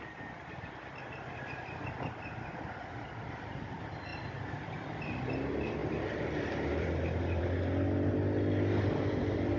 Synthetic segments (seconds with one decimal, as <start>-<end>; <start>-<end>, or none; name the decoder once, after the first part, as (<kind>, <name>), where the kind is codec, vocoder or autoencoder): 5.8-7.4 (vocoder, BigVGAN v2)